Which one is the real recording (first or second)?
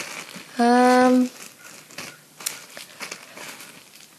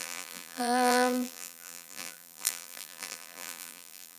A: first